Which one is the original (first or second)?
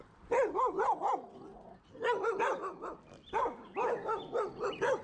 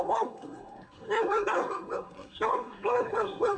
first